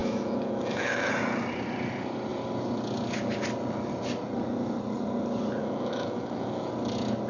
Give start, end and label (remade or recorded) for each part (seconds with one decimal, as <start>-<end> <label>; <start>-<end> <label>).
0.0-1.1 remade; 1.1-5.6 recorded; 5.6-6.7 remade; 6.7-7.3 recorded